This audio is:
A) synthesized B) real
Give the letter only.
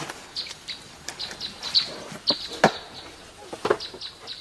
B